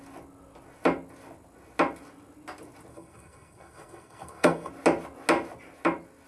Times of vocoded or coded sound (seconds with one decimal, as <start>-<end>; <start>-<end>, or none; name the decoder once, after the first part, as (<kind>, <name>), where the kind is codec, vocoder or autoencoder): 2.9-4.7 (codec, SNAC)